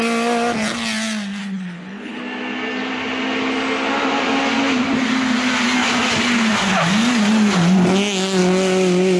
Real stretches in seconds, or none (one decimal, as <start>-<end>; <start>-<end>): 0.0-1.4; 2.2-9.2